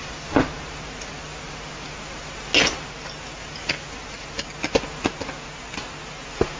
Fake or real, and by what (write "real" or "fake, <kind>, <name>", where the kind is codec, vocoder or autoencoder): real